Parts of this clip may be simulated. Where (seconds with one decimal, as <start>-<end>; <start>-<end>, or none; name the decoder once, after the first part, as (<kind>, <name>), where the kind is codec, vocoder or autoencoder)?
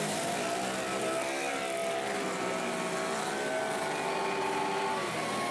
none